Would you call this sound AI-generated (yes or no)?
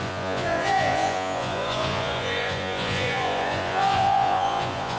yes